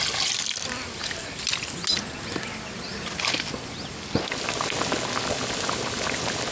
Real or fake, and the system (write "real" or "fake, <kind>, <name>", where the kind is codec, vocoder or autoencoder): real